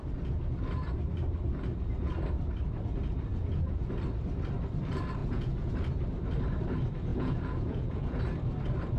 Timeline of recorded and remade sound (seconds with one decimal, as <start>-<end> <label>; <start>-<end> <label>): 0.0-3.3 recorded; 3.3-3.9 remade; 3.9-5.2 recorded; 5.2-5.7 remade; 5.7-7.1 recorded; 7.1-8.2 remade; 8.2-9.0 recorded